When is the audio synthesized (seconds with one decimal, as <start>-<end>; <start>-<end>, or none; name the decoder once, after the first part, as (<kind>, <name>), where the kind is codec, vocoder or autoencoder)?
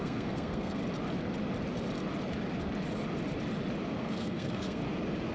0.0-0.8 (codec, SNAC); 4.0-4.8